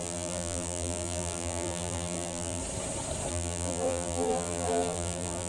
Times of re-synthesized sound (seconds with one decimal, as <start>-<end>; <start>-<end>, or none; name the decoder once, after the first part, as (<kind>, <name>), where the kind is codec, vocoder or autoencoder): 0.0-2.6 (vocoder, BigVGAN v2); 3.3-5.5